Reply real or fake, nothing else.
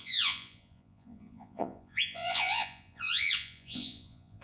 fake